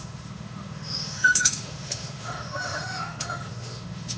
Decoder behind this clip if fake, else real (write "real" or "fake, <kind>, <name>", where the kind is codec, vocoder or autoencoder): fake, autoencoder, DAC-VAE